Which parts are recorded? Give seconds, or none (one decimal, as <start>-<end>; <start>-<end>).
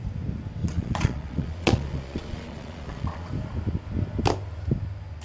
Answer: 0.0-0.6; 3.3-5.2